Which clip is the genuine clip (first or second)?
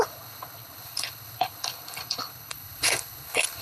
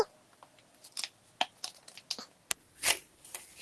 second